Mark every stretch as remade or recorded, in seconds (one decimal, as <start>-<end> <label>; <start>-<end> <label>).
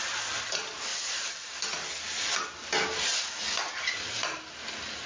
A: 0.0-5.1 recorded